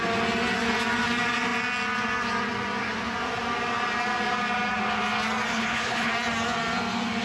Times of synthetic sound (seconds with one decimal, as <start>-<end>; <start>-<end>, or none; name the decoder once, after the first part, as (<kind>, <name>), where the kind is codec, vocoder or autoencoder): 5.5-6.1 (codec, HILCodec)